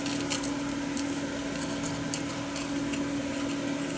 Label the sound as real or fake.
real